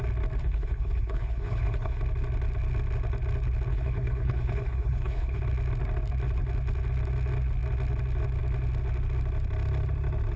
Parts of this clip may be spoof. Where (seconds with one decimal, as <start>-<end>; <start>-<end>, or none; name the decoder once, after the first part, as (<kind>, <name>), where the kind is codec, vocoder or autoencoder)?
0.4-2.0 (codec, HILCodec); 3.7-5.4